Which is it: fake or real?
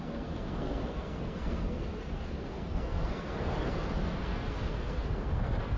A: fake